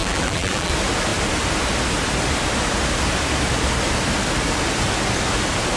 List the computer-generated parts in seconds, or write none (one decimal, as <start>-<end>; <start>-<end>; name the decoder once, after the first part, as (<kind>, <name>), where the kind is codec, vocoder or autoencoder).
0.0-0.7 (vocoder, BigVGAN v2)